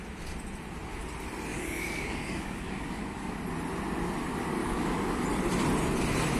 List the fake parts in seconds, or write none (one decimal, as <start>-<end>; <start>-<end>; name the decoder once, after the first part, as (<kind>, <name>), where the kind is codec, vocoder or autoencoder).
1.5-3.4 (codec, DAC); 4.6-5.2